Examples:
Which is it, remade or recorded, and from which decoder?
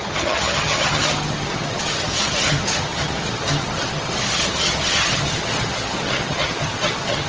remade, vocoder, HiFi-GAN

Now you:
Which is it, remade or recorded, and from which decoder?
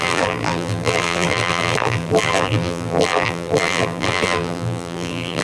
remade, vocoder, BigVGAN v2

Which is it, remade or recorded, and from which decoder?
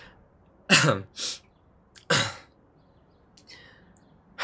recorded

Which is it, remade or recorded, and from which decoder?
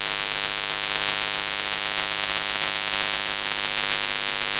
recorded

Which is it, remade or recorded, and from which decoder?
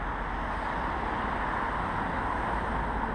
recorded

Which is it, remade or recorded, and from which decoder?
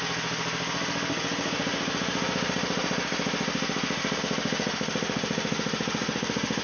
recorded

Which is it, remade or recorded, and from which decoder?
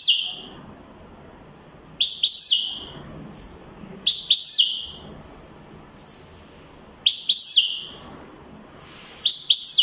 recorded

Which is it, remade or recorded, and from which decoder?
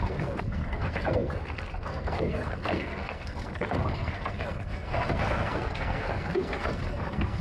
remade, codec, SNAC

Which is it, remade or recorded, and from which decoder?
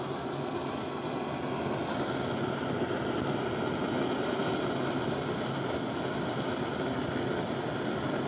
recorded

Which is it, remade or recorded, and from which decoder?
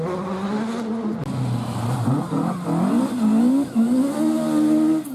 recorded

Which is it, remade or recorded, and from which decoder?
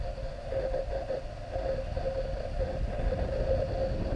recorded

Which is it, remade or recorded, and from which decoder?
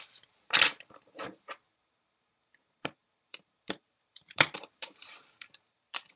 remade, vocoder, BigVGAN v2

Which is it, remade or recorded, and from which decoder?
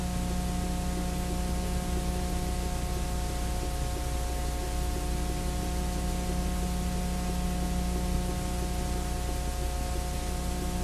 recorded